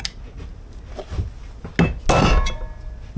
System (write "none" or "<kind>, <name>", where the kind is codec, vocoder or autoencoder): none